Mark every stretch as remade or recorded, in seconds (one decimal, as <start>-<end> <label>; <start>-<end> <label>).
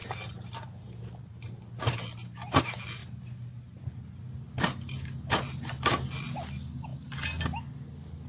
0.0-8.3 recorded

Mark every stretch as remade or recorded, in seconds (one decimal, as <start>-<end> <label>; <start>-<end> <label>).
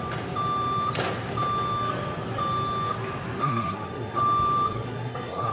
0.0-3.4 recorded; 3.4-4.2 remade; 4.2-4.7 recorded; 4.7-5.5 remade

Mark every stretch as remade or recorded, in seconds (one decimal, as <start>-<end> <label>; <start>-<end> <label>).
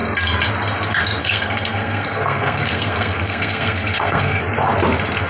0.0-1.2 recorded; 1.2-4.4 remade; 4.4-5.3 recorded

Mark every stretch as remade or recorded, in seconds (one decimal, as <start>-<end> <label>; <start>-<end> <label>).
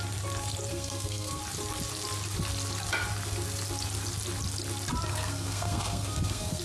0.0-0.7 recorded; 0.7-1.4 remade; 1.4-5.1 recorded; 5.1-6.6 remade